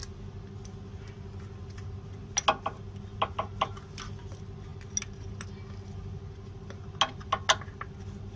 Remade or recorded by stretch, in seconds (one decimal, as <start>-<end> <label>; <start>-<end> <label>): 0.0-8.4 recorded

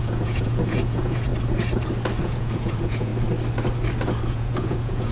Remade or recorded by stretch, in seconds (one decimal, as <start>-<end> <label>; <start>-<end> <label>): 0.0-1.3 remade; 1.3-2.2 recorded; 2.2-3.1 remade; 3.1-4.3 recorded; 4.3-5.1 remade